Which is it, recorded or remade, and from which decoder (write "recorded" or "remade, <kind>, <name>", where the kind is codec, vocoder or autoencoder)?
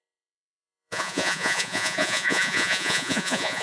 remade, vocoder, Vocos